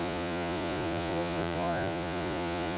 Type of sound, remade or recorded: remade